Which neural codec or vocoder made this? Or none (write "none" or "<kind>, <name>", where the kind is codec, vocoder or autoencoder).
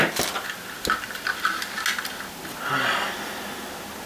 none